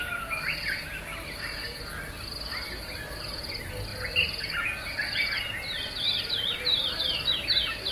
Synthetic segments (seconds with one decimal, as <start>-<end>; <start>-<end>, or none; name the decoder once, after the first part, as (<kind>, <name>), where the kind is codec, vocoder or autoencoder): none